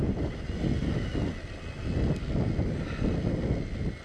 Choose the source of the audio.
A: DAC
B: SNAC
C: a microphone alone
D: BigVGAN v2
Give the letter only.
C